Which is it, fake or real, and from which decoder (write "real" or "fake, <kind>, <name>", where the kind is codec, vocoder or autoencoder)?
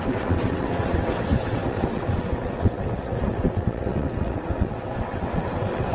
fake, vocoder, WaveNeXt